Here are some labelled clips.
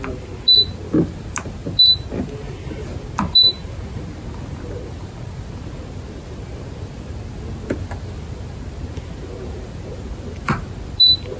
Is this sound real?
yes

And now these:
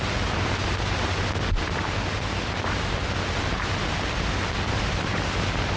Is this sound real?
yes